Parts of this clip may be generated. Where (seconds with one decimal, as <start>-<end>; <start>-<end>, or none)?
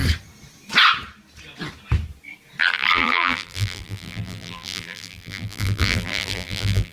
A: 2.6-6.9